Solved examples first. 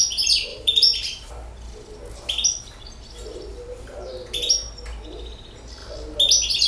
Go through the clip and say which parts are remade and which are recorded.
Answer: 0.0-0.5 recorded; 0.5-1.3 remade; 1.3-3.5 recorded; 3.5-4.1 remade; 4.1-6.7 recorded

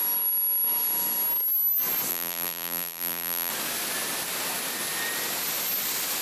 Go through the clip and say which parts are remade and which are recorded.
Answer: 0.0-2.1 recorded; 2.1-3.5 remade; 3.5-6.2 recorded

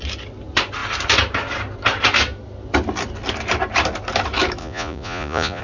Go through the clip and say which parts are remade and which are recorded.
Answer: 0.0-4.6 recorded; 4.6-5.6 remade

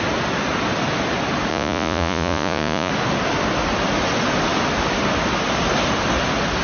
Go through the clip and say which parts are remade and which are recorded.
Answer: 0.0-1.5 recorded; 1.5-2.9 remade; 2.9-6.6 recorded

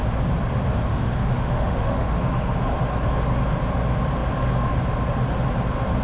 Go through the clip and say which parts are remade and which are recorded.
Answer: 0.0-0.9 recorded; 0.9-2.6 remade; 2.6-6.0 recorded